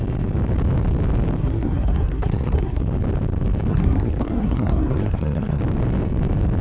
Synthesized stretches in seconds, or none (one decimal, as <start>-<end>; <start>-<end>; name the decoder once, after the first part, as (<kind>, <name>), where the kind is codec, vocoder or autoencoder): 1.4-2.8 (codec, SNAC); 3.7-5.6